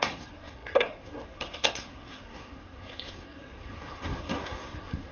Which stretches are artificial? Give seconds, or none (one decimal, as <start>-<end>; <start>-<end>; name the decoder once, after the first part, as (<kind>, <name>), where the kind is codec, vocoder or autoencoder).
0.0-5.1 (codec, SNAC)